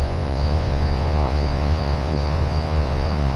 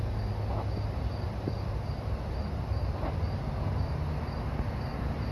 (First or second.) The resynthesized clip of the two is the first